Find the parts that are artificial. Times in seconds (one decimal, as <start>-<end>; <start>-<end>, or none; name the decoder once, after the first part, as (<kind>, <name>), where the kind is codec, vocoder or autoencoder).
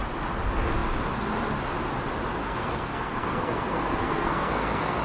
2.4-5.0 (codec, SNAC)